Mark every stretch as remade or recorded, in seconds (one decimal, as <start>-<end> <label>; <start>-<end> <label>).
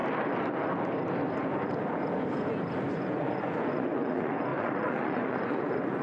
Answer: 0.0-2.9 recorded; 2.9-6.0 remade